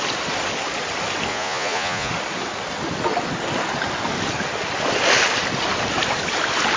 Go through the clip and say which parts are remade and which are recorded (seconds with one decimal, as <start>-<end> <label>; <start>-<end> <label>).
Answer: 0.0-1.3 recorded; 1.3-2.1 remade; 2.1-6.8 recorded